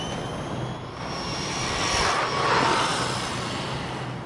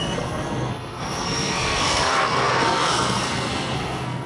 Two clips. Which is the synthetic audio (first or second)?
second